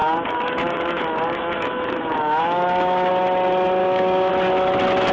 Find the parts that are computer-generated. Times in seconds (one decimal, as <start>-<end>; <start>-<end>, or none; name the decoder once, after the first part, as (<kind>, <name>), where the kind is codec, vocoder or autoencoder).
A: 0.0-3.1 (codec, DAC); 3.8-4.3